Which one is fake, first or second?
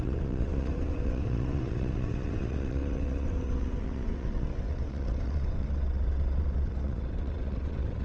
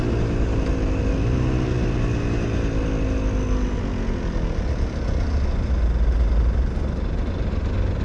first